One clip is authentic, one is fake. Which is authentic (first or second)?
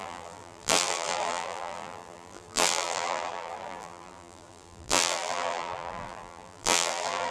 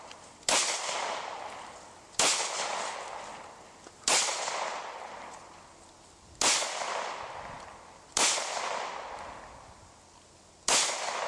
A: second